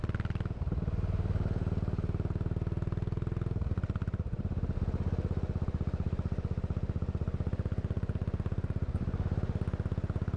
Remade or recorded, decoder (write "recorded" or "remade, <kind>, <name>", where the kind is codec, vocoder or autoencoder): recorded